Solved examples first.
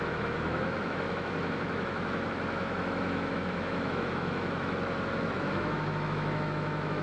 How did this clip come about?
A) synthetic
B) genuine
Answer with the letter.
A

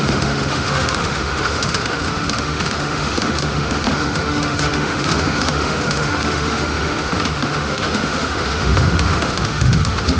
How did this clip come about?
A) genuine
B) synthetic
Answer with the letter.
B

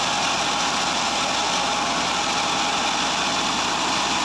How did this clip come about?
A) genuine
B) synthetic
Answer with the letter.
A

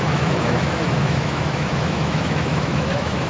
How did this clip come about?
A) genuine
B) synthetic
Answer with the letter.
B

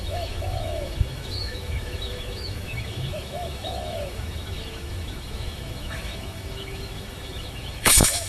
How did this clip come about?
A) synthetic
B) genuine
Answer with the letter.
A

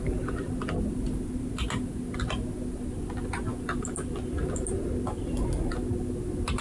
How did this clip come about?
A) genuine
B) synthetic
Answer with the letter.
A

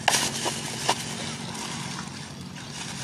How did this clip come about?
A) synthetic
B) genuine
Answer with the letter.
B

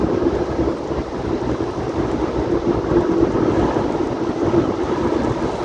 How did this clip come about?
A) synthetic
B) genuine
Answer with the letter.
B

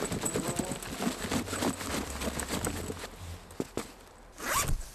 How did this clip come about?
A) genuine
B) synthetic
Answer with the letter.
A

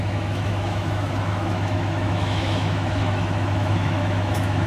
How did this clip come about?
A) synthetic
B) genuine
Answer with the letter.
A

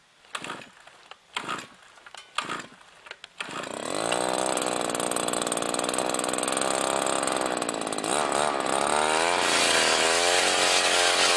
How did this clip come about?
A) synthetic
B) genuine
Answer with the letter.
B